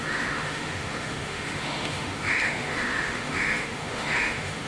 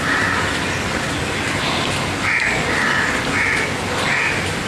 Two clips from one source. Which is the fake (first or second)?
first